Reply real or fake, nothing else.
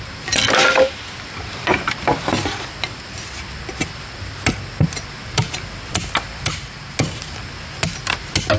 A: real